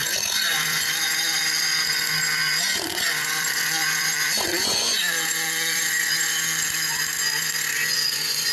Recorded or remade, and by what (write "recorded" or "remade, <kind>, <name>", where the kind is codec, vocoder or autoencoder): remade, vocoder, Vocos